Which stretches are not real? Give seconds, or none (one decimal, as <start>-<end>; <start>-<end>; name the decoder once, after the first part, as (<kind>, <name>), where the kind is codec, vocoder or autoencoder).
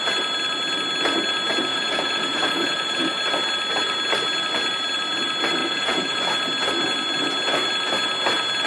1.7-3.2 (vocoder, Vocos); 5.6-6.2